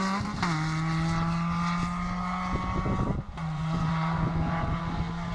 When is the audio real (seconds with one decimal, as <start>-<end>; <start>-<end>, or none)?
0.0-3.4; 4.8-5.3